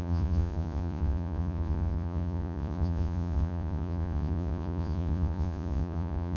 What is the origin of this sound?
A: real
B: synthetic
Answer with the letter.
B